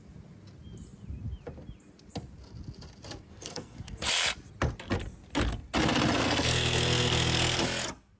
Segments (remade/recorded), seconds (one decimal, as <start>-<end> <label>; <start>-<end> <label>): 0.0-3.3 recorded; 3.3-4.1 remade; 4.1-6.2 recorded; 6.2-7.6 remade; 7.6-8.2 recorded